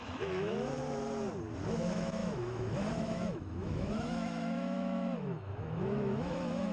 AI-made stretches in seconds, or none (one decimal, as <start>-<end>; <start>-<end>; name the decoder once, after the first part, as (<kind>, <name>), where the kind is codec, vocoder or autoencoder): 0.0-0.8 (autoencoder, DAC-VAE); 1.7-6.7